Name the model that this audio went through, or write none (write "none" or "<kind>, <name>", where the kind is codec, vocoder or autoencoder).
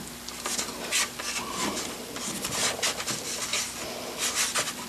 none